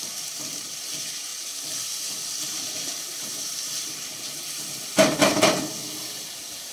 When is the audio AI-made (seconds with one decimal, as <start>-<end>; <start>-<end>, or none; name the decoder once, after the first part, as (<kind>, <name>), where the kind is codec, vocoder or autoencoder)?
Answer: 0.0-1.3 (vocoder, BigVGAN v2); 2.4-5.3; 6.3-6.7

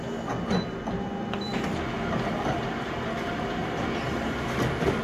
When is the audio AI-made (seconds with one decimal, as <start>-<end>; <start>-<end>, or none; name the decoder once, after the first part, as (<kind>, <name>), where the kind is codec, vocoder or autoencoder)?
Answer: 0.0-1.5 (vocoder, BigVGAN v2); 2.1-3.6

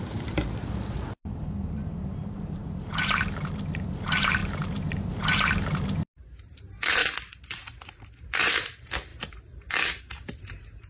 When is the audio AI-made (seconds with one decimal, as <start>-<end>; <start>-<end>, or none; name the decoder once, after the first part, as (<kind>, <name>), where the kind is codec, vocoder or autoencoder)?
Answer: 0.0-7.0 (vocoder, BigVGAN v2); 8.2-9.1; 10.0-10.9

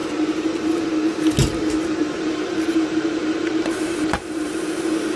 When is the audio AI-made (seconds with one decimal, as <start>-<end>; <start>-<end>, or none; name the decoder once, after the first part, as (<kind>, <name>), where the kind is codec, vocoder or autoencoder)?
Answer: 0.0-0.9 (vocoder, BigVGAN v2); 1.4-4.5